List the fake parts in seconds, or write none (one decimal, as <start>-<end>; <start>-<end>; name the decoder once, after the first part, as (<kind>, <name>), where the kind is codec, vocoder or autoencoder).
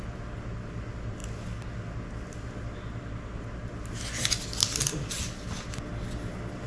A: none